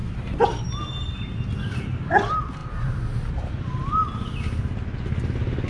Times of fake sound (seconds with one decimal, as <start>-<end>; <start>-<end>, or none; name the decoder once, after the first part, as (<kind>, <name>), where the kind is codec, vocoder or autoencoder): 2.6-3.5 (vocoder, BigVGAN v2)